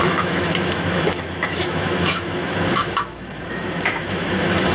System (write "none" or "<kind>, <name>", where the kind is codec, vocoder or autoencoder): autoencoder, DAC-VAE